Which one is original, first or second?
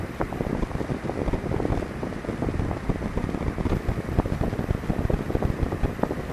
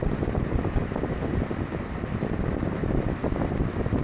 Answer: second